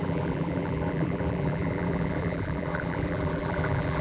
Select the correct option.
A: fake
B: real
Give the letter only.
A